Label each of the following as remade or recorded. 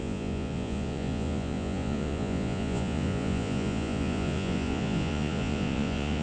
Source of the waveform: remade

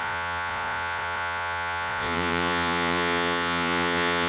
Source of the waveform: remade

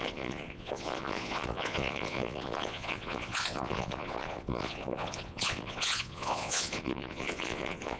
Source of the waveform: remade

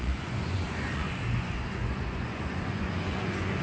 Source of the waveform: remade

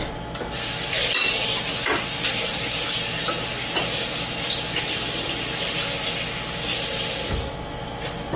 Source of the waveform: recorded